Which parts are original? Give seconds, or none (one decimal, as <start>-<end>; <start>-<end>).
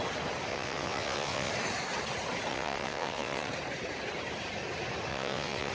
0.0-0.5; 1.5-2.5; 3.5-5.1